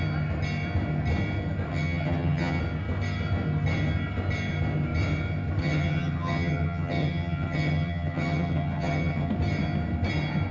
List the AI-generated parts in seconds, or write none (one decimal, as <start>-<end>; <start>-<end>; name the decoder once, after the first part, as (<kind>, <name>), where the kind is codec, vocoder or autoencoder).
1.7-2.6 (vocoder, HiFi-GAN); 5.6-9.3